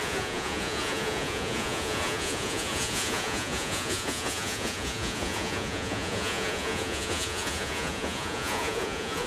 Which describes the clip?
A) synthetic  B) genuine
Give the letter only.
A